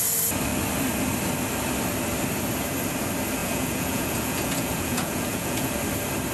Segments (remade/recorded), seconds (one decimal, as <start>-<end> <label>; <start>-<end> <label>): 0.0-3.4 recorded; 3.4-5.7 remade; 5.7-6.3 recorded